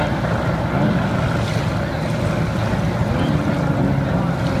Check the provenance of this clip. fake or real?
real